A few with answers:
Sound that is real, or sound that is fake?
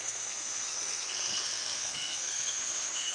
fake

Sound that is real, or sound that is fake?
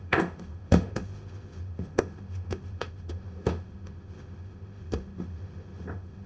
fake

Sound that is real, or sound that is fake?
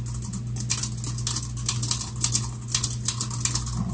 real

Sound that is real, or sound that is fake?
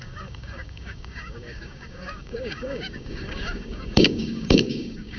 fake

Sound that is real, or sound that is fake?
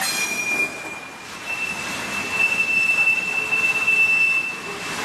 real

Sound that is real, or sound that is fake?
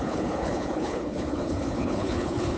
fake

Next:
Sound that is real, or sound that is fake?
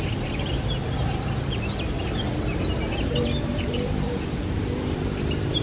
real